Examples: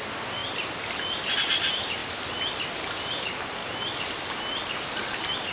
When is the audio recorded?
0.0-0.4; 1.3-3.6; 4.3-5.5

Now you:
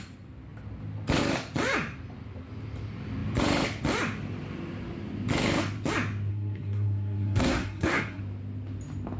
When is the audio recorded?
0.0-6.3; 8.2-9.2

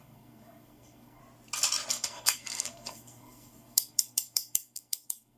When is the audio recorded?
1.2-1.9

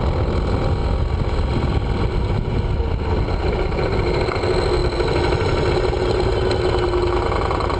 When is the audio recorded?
0.0-7.8